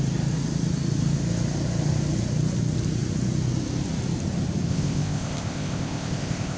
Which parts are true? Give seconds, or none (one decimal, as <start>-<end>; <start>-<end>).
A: 0.0-4.7